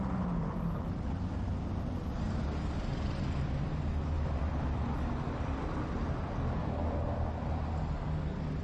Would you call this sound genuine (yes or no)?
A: yes